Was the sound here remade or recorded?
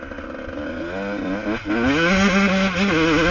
recorded